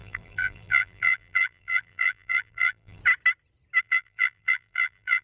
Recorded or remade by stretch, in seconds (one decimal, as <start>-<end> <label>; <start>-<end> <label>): 0.0-3.0 remade; 3.0-3.8 recorded; 3.8-5.2 remade